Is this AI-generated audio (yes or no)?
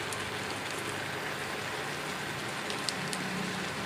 no